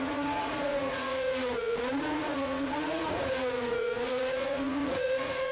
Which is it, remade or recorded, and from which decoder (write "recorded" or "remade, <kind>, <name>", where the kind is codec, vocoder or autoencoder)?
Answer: remade, vocoder, Vocos